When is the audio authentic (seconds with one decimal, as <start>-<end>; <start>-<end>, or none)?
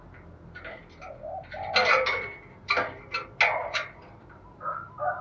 0.0-5.2